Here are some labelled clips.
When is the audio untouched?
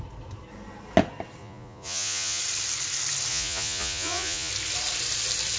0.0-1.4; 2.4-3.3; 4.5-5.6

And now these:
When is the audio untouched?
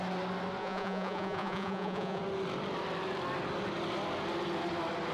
0.0-0.6; 2.2-5.1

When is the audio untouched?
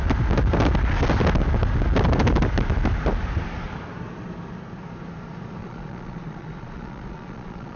0.0-5.6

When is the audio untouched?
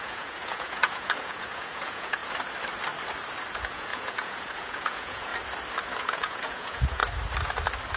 2.2-3.5; 5.3-6.0; 7.0-8.0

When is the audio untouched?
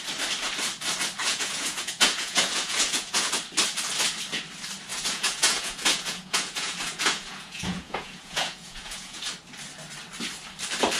0.0-1.2; 3.3-4.9; 9.2-11.0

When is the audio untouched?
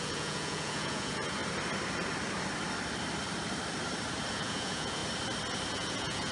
1.4-4.3; 5.0-5.7